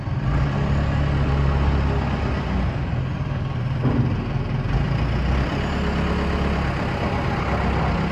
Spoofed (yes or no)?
no